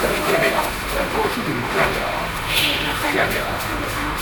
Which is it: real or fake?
fake